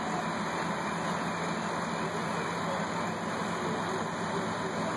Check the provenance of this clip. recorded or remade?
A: recorded